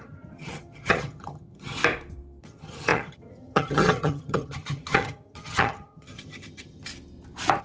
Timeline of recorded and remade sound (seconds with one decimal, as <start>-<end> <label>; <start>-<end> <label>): 0.0-1.8 remade; 1.8-2.4 recorded; 2.4-6.9 remade; 6.9-7.6 recorded